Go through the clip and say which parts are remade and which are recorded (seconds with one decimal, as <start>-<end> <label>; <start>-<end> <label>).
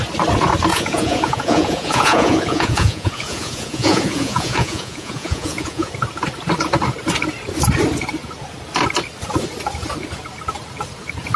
0.0-0.7 recorded; 0.7-5.9 remade; 5.9-11.4 recorded